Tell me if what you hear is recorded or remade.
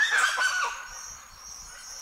recorded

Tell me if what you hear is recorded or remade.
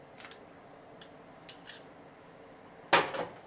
recorded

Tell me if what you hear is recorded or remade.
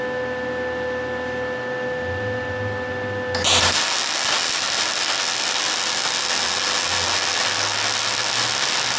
recorded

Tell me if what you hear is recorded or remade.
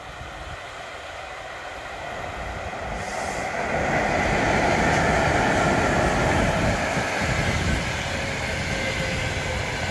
recorded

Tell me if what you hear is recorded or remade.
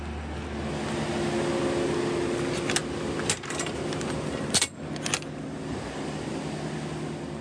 recorded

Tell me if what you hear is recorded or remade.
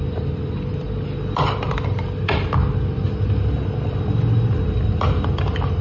recorded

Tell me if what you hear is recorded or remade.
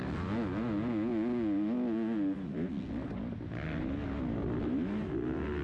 recorded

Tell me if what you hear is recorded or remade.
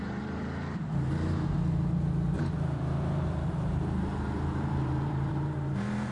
remade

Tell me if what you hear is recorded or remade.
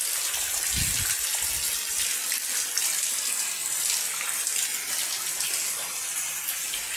recorded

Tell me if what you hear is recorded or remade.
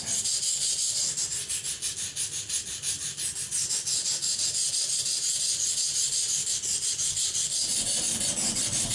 recorded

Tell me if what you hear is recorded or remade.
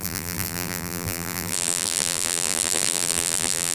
remade